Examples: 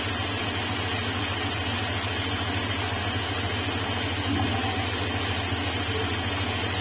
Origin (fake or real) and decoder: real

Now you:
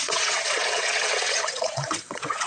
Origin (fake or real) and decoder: fake, vocoder, WaveNeXt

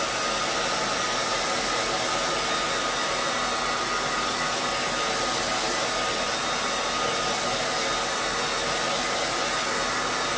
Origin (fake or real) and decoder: real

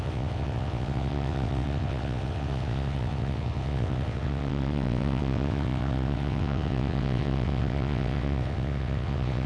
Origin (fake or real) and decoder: fake, vocoder, WaveNeXt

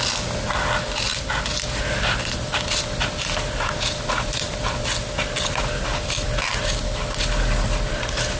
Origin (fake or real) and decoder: real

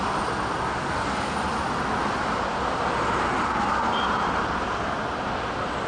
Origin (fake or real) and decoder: real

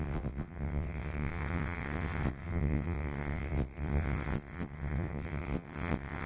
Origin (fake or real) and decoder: fake, vocoder, WaveNeXt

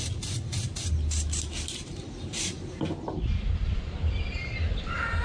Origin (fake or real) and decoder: real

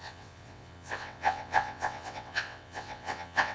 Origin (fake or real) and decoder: fake, vocoder, WaveNeXt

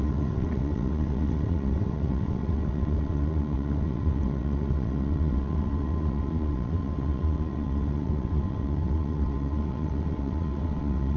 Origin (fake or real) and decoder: fake, vocoder, WaveNeXt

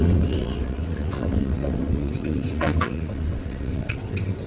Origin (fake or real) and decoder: fake, vocoder, WaveNeXt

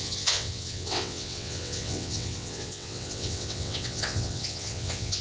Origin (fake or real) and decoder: fake, vocoder, WaveNeXt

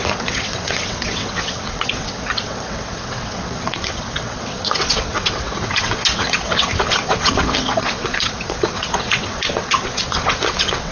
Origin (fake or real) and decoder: fake, vocoder, WaveNeXt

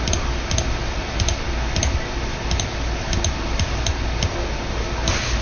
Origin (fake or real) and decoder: real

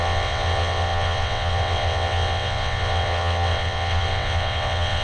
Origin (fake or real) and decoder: fake, vocoder, WaveNeXt